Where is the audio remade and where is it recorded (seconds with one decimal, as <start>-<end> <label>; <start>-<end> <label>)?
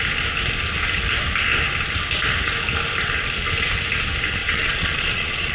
0.0-4.4 recorded; 4.4-5.5 remade